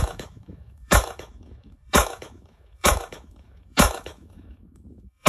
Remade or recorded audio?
remade